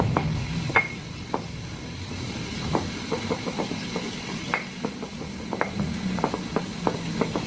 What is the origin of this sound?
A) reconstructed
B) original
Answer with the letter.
A